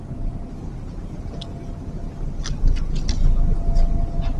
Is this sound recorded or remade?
recorded